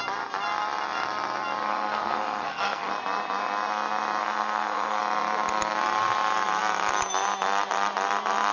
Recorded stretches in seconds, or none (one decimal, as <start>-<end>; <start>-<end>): 0.0-1.7; 2.9-4.2; 5.0-8.5